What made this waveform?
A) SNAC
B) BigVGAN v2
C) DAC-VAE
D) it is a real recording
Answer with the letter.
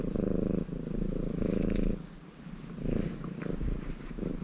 D